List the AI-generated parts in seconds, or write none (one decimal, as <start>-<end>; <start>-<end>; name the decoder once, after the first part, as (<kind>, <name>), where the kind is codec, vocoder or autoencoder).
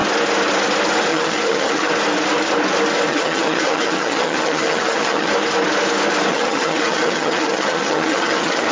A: 1.1-1.9 (vocoder, HiFi-GAN); 3.1-5.3; 6.3-8.7